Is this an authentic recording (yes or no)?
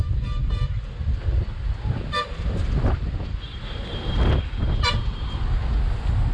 yes